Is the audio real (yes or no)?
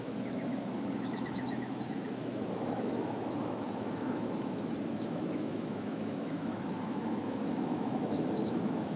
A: no